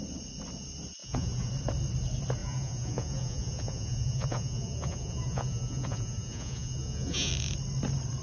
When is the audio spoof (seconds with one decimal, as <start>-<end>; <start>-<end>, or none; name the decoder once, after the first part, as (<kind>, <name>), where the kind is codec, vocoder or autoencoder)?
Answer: 1.0-1.5 (vocoder, Vocos); 2.4-7.3